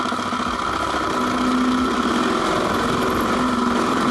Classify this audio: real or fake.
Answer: real